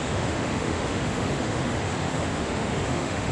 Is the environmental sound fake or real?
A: fake